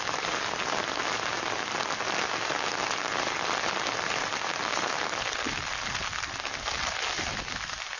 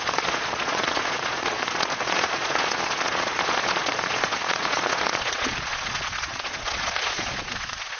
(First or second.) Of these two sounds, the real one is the first